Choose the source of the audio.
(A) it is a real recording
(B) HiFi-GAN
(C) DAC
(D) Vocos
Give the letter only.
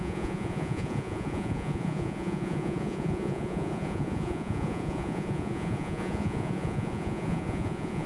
D